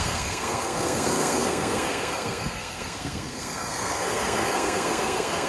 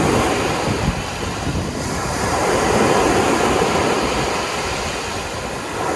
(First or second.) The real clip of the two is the second